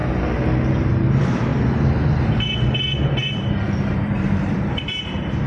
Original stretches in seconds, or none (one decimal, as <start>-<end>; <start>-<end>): 0.0-0.7; 1.5-3.0